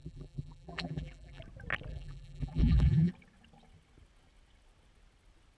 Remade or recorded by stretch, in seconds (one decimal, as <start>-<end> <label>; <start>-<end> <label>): 0.0-1.4 remade; 1.4-1.9 recorded; 1.9-3.1 remade; 3.1-5.6 recorded